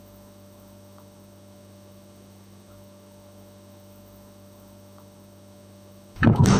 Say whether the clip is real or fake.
fake